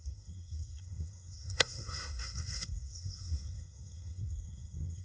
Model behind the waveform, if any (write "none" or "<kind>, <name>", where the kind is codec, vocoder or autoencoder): codec, SNAC